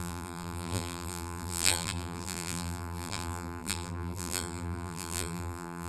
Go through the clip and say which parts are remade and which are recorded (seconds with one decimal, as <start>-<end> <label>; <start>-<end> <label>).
0.0-5.9 remade